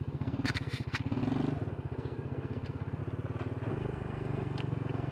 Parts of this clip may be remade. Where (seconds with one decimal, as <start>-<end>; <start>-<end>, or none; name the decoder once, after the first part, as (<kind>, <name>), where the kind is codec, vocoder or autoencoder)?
0.0-1.2 (codec, SNAC); 1.7-3.0; 3.7-5.1